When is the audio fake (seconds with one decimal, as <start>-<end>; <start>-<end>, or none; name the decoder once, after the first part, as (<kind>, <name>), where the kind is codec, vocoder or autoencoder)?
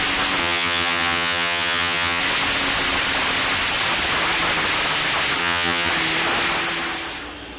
0.4-2.2 (vocoder, HiFi-GAN); 5.4-5.9